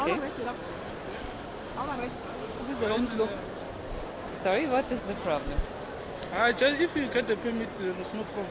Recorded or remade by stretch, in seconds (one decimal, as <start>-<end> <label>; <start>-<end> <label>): 0.0-8.5 recorded